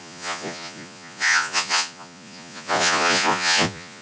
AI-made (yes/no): yes